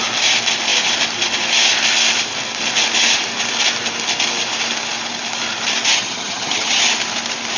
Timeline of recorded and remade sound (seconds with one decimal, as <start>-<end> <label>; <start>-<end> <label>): 0.0-5.9 recorded; 5.9-6.8 remade; 6.8-7.6 recorded